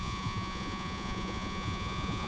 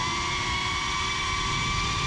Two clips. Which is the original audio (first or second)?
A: second